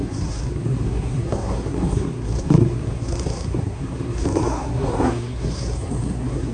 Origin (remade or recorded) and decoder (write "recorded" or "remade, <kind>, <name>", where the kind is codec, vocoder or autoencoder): remade, codec, SNAC